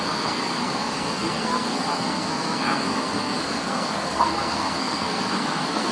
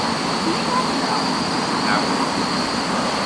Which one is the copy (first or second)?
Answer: first